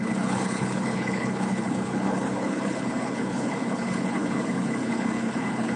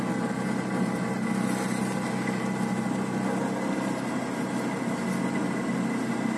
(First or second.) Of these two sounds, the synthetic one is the first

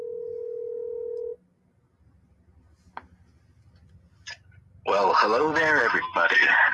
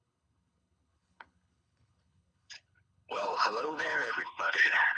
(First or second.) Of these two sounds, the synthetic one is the second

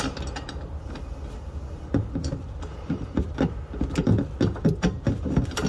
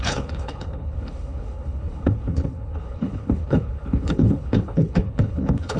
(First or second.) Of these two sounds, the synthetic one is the second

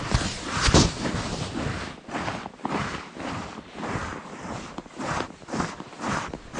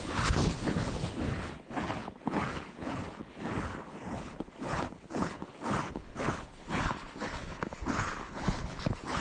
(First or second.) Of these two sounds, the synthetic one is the second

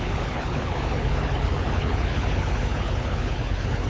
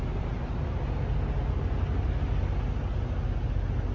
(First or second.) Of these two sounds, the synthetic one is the first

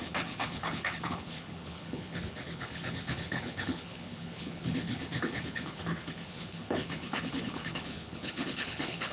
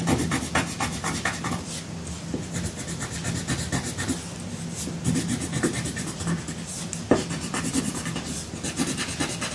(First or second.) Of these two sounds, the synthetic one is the first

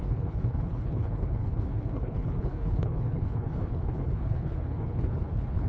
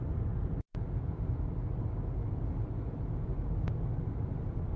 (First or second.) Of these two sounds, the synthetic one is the first